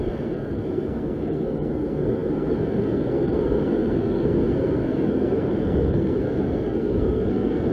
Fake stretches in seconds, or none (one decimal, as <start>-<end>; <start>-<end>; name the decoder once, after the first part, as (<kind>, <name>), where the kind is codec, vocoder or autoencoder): 0.0-7.7 (codec, SNAC)